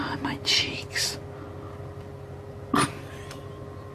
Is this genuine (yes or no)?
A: yes